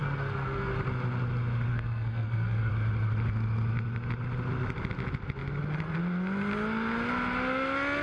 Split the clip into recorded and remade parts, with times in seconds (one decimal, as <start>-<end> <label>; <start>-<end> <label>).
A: 0.0-0.7 remade; 0.7-1.7 recorded; 1.7-2.7 remade; 2.7-8.0 recorded